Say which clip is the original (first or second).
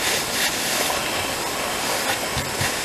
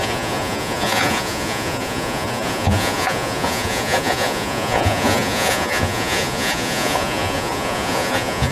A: first